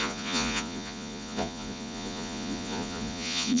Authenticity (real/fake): fake